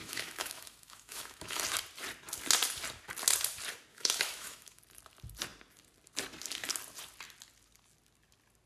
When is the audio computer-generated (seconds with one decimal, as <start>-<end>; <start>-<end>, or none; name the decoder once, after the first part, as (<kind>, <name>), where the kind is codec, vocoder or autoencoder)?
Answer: 0.0-1.6 (autoencoder, DAC-VAE); 3.9-4.8

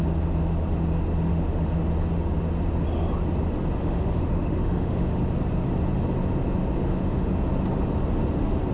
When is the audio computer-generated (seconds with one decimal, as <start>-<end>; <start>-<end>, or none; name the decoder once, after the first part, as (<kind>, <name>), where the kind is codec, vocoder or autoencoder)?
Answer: 1.3-1.8 (autoencoder, DAC-VAE); 3.8-5.2; 6.8-7.3

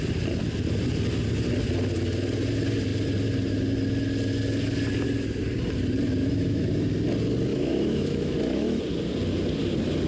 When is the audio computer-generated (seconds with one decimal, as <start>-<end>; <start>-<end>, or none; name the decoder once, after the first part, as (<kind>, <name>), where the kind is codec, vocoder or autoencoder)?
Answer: 6.2-6.7 (autoencoder, DAC-VAE); 7.5-8.8